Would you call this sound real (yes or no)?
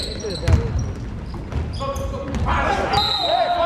yes